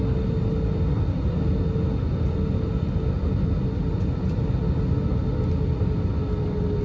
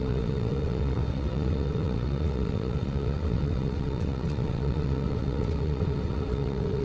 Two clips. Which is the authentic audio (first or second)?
first